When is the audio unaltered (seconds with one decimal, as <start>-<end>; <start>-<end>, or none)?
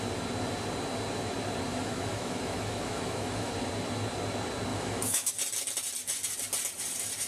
0.0-1.7; 3.5-4.7; 5.3-7.3